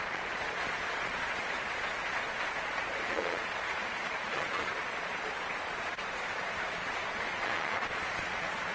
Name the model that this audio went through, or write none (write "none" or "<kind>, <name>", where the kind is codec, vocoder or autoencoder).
vocoder, Vocos